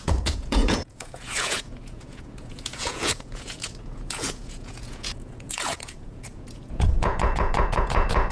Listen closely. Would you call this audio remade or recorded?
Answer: remade